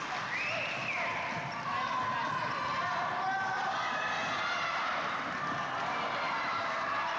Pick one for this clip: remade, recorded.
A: recorded